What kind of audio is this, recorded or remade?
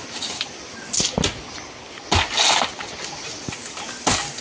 recorded